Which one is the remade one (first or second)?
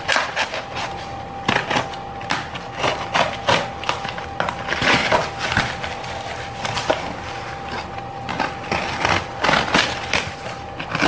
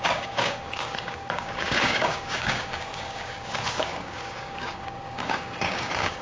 second